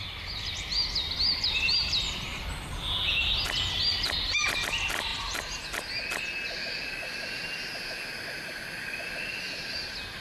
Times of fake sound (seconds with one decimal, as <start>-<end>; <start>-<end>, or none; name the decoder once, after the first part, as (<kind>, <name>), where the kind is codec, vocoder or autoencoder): none